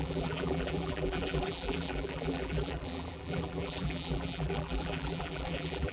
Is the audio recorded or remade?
remade